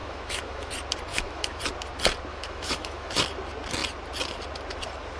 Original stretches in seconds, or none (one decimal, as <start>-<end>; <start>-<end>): 0.7-1.1; 1.6-2.3; 3.1-5.2